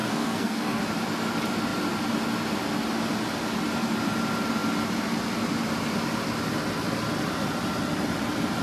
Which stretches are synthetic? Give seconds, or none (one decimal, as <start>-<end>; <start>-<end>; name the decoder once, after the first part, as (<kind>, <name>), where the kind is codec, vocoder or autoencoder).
0.0-0.8 (codec, SNAC)